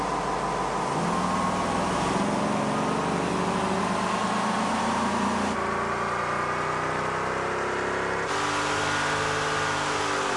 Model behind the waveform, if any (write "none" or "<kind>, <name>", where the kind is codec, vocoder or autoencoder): none